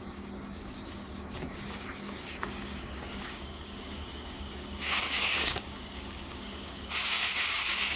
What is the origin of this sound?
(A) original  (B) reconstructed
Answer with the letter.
B